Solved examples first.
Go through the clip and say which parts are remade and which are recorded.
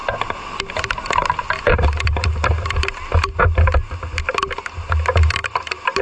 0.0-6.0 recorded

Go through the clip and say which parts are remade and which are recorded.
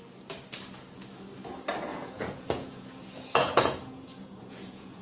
0.0-1.9 recorded; 1.9-5.0 remade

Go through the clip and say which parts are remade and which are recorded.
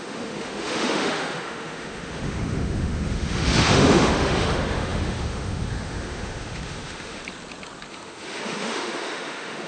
0.0-7.2 remade; 7.2-7.9 recorded; 7.9-9.7 remade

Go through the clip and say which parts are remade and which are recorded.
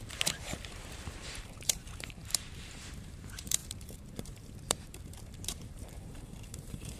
0.0-7.0 remade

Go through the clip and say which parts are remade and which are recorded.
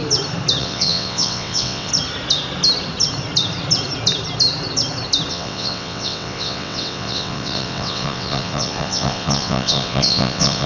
0.0-0.6 recorded; 0.6-1.9 remade; 1.9-5.3 recorded; 5.3-10.7 remade